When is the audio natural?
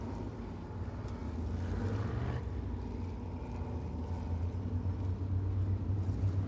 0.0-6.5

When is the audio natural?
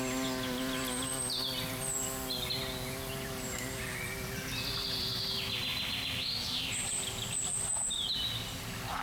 0.0-9.0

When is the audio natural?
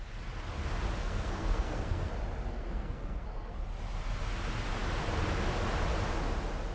0.0-1.0; 2.1-2.5; 3.6-6.7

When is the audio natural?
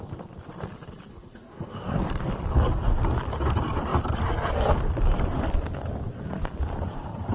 0.0-1.1; 2.0-7.3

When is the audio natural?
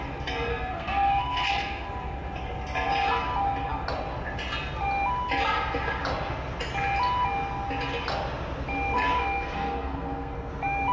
0.0-0.5; 1.9-9.2; 10.5-10.9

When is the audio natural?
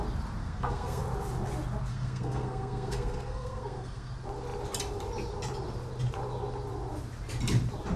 0.0-0.4; 1.0-1.9; 4.1-8.0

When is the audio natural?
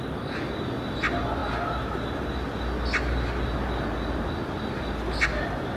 0.0-5.8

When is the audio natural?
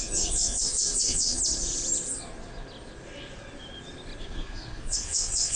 1.4-4.2